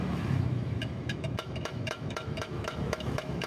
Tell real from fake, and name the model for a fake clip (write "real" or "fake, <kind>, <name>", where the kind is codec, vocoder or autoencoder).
fake, autoencoder, DAC-VAE